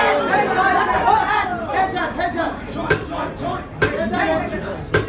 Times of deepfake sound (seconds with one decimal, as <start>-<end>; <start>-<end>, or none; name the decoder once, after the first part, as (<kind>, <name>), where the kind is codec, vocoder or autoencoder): none